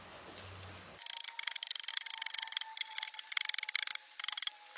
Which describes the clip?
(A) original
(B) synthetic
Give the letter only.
A